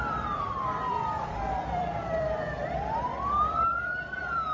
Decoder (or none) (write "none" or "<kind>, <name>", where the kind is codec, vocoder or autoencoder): vocoder, BigVGAN v2